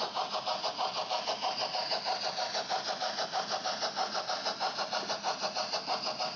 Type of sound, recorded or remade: recorded